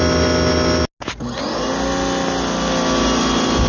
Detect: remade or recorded recorded